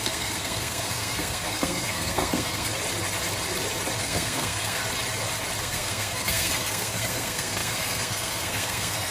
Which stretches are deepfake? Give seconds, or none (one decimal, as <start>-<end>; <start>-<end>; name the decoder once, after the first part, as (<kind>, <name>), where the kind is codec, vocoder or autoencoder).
0.0-2.7 (codec, SNAC); 4.0-4.8; 5.6-9.1